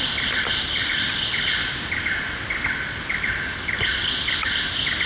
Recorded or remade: recorded